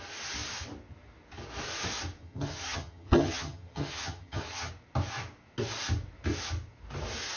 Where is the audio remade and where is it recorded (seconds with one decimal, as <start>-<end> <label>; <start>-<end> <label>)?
0.0-2.2 recorded; 2.2-4.7 remade; 4.7-7.4 recorded